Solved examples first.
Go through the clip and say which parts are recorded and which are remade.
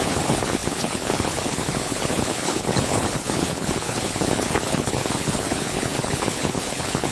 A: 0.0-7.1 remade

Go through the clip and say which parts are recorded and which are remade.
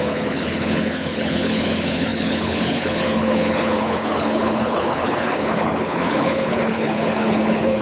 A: 0.0-7.8 remade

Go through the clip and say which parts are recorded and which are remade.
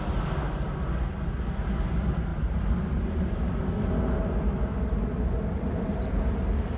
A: 0.0-6.8 recorded